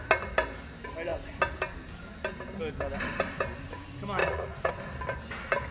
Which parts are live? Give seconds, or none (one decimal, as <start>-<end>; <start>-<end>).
0.0-4.2; 4.7-5.7